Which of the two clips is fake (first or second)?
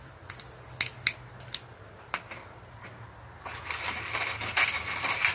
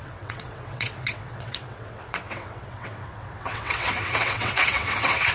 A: second